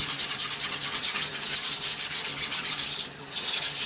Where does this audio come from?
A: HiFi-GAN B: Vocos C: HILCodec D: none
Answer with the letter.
A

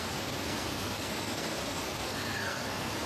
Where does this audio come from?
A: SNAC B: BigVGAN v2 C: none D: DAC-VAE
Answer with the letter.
A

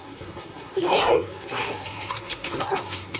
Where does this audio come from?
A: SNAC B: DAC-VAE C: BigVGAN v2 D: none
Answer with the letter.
A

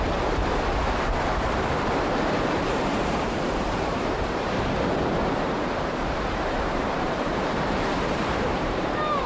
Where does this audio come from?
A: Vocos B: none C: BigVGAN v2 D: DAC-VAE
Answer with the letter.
C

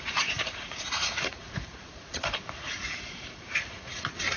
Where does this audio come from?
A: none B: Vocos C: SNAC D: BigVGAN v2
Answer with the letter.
B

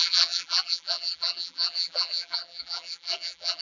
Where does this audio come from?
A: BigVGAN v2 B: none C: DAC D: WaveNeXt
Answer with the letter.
A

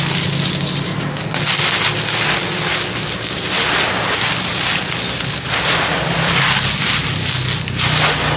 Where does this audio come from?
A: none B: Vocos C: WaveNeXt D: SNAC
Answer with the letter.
A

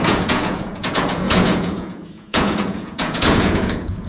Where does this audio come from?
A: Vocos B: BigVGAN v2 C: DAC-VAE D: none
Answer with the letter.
A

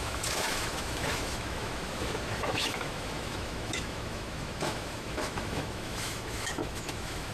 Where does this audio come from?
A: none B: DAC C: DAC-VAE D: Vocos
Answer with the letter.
C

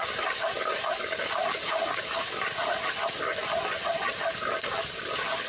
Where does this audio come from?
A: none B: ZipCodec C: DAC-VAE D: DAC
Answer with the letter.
A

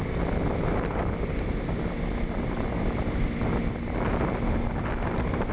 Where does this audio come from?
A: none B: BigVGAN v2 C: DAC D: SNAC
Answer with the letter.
A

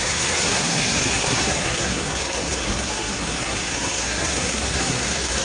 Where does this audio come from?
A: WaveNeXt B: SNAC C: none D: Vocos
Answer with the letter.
B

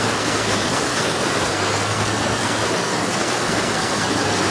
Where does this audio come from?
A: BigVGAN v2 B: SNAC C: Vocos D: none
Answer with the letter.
B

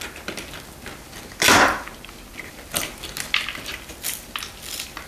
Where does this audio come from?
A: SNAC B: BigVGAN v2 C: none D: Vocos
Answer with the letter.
C